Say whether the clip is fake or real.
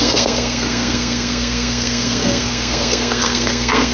fake